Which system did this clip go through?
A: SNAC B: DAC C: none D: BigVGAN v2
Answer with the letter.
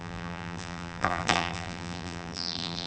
D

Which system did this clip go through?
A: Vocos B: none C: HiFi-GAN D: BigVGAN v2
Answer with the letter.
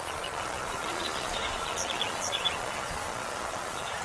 A